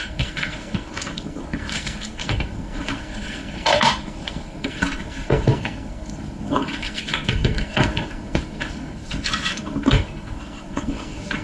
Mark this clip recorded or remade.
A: remade